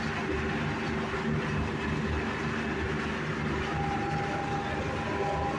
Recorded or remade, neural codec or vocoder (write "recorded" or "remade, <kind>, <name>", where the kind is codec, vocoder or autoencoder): recorded